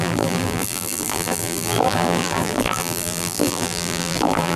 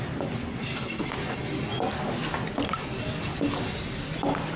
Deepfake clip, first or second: first